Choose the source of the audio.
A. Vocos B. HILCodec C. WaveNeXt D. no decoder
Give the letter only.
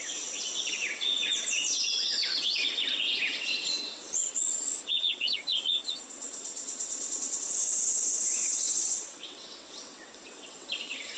C